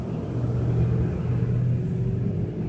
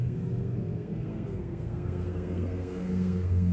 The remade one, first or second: second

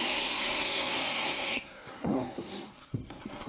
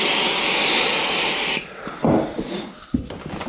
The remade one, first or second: first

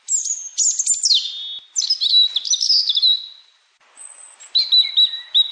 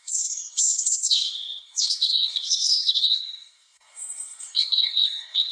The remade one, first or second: second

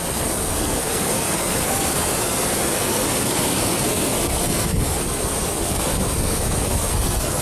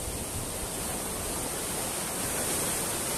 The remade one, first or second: first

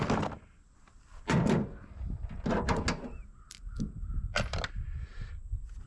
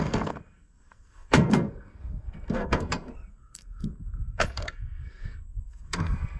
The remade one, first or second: second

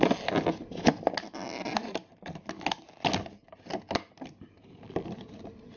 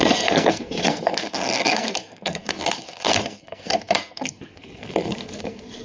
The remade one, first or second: second